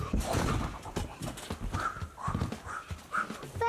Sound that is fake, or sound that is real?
real